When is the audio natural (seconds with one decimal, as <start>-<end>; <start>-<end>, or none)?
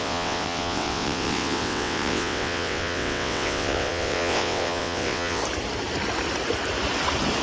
5.4-7.4